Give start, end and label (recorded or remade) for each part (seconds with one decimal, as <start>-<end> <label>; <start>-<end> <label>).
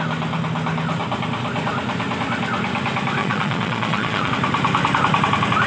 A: 0.0-3.2 recorded; 3.2-4.3 remade; 4.3-5.7 recorded